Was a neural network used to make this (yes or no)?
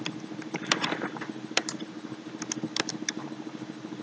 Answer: yes